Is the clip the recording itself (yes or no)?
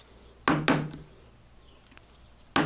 yes